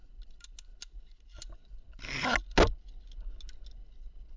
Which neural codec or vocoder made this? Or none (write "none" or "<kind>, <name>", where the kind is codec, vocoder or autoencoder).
none